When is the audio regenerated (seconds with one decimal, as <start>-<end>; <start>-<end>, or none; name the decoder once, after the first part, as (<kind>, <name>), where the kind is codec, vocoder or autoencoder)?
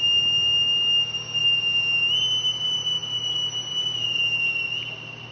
none